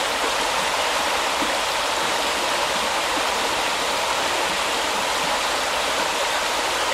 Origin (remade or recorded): recorded